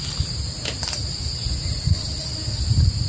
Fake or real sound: real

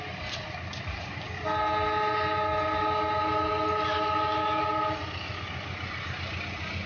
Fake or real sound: real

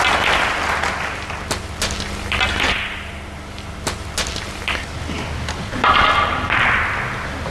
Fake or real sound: real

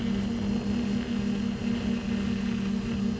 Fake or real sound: real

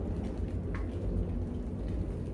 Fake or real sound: real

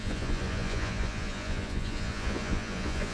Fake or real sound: fake